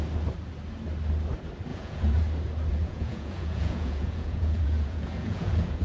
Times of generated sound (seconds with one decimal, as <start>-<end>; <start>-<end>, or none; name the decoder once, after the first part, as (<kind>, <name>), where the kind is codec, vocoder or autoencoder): 1.7-2.2 (vocoder, Vocos); 2.7-5.8